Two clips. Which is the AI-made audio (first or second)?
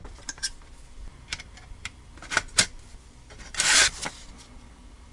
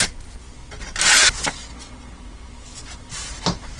first